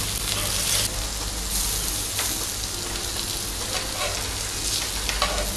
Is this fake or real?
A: real